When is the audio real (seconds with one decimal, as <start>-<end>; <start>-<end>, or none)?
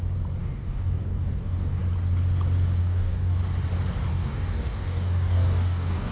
0.0-0.4; 1.8-2.8; 3.4-4.1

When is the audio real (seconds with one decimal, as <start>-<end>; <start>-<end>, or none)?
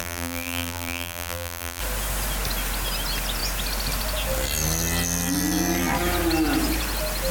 1.8-7.3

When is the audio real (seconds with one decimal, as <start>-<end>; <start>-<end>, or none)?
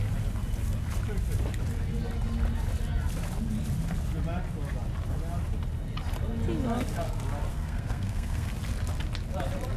0.0-7.5; 8.5-9.8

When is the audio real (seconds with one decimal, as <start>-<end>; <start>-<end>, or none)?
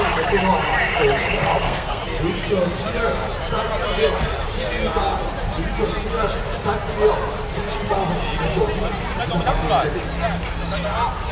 0.0-1.2; 2.0-11.3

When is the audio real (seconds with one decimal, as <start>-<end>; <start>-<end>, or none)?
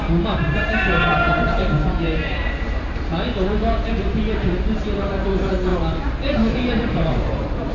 0.0-7.7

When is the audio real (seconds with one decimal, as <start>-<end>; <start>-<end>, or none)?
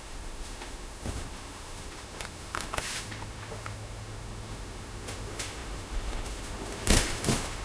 none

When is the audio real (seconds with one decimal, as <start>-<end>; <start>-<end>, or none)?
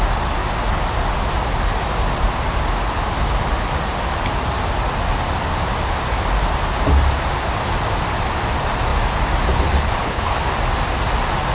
0.0-10.0; 10.5-11.5